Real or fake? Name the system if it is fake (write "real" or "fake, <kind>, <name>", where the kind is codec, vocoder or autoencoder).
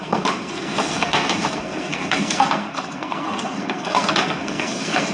fake, codec, SNAC